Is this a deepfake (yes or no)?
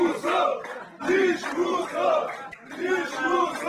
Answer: no